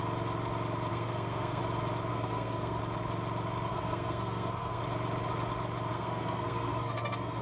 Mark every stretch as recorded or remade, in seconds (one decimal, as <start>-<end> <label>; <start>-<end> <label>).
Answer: 0.0-0.9 recorded; 0.9-1.6 remade; 1.6-2.1 recorded; 2.1-2.8 remade; 2.8-3.7 recorded; 3.7-4.8 remade; 4.8-5.9 recorded; 5.9-7.4 remade